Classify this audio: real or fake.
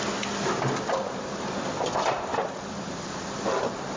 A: real